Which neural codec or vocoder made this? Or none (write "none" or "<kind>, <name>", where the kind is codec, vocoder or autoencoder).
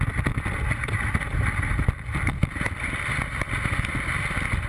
none